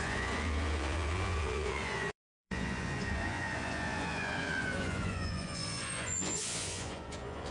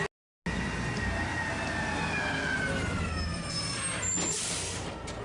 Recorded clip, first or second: second